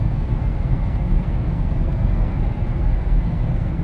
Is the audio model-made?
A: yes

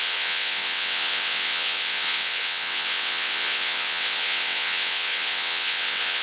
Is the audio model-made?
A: yes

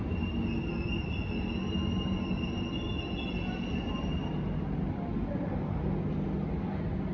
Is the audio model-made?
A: no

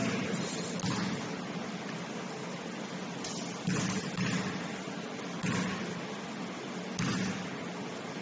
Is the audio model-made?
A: no